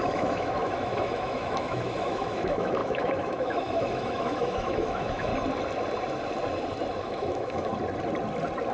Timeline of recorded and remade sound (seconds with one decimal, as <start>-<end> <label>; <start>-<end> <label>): 0.0-5.3 remade; 5.3-7.0 recorded; 7.0-7.7 remade; 7.7-8.7 recorded